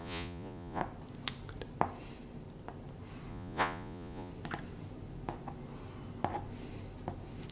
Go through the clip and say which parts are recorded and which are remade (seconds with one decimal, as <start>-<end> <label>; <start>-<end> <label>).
0.0-0.8 remade; 0.8-3.3 recorded; 3.3-4.3 remade; 4.3-7.5 recorded